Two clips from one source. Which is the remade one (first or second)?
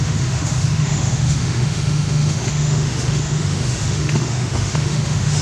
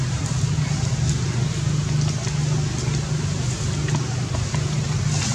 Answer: first